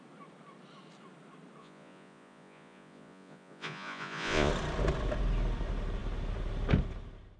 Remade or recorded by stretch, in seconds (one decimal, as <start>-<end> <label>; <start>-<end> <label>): 0.0-1.6 recorded; 1.6-4.5 remade; 4.5-7.4 recorded